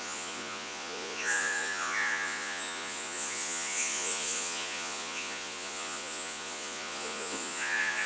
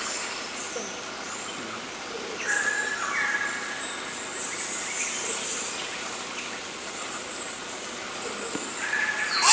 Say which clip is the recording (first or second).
second